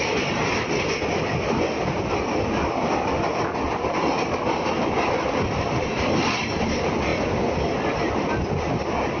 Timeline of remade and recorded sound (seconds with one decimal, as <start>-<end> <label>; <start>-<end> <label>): 0.0-9.2 recorded